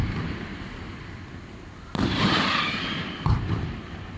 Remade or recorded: remade